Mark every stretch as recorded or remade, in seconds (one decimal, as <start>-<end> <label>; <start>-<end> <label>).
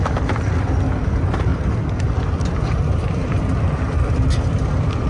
0.0-1.5 remade; 1.5-2.6 recorded; 2.6-5.1 remade